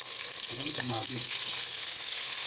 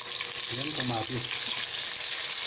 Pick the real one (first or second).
second